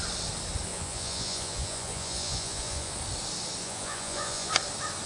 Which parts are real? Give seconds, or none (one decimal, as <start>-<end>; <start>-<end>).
0.0-0.7; 2.9-3.6; 4.5-5.1